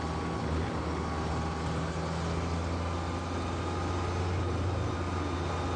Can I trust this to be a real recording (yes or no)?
yes